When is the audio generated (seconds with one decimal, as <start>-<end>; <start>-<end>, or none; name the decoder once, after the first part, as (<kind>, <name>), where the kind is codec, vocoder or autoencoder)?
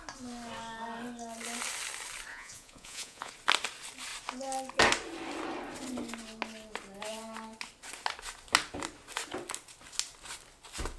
2.3-3.3 (vocoder, Vocos)